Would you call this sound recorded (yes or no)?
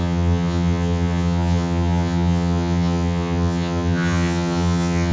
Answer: no